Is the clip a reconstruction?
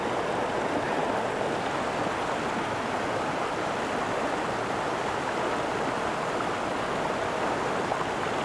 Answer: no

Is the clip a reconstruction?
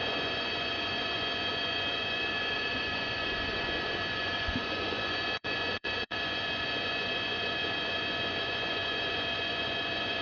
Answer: yes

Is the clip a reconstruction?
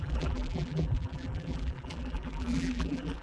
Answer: yes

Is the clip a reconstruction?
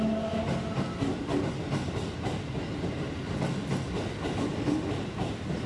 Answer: no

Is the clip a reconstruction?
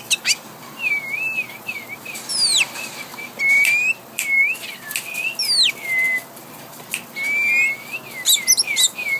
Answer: no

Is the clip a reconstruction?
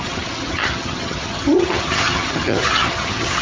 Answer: yes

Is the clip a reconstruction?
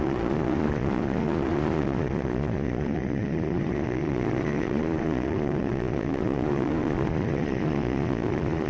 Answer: yes